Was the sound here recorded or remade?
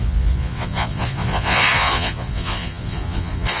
remade